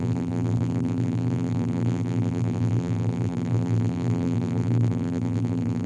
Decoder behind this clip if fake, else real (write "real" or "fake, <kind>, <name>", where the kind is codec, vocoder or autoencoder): fake, vocoder, BigVGAN v2